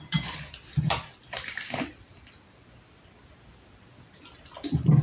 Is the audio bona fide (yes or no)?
yes